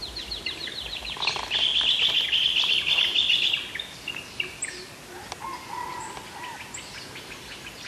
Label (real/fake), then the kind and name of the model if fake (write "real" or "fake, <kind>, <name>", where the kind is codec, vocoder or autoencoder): real